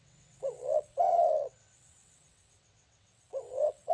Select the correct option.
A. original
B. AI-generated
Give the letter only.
B